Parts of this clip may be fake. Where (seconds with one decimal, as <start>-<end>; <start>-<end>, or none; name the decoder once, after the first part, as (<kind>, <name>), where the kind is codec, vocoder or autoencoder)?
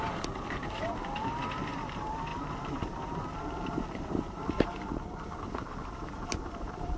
0.0-7.0 (vocoder, BigVGAN v2)